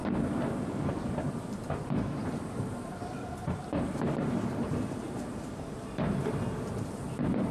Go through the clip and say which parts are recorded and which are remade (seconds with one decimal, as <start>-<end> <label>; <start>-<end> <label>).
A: 0.0-0.9 recorded; 0.9-7.5 remade